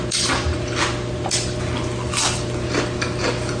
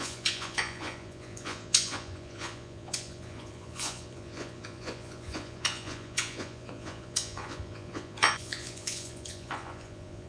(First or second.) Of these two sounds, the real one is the first